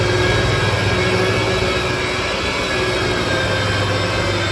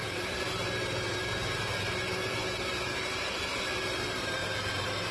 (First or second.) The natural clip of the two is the first